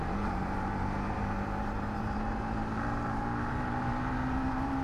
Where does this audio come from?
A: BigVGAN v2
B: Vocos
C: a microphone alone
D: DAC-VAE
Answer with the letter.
A